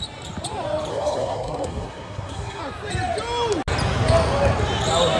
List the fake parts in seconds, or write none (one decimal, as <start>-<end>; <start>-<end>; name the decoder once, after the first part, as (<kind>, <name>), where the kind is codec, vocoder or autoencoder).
0.9-2.6 (codec, SNAC)